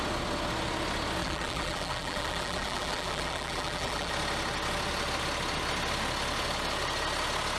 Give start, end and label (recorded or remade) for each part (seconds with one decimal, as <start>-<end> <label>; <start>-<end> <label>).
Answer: 0.0-1.2 recorded; 1.2-4.1 remade; 4.1-7.6 recorded